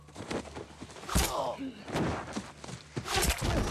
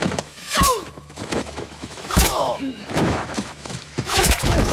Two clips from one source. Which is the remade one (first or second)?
second